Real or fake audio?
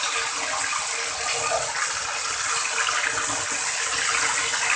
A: real